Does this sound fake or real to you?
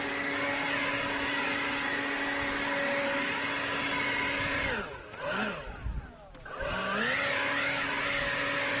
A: real